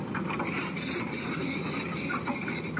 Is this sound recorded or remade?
recorded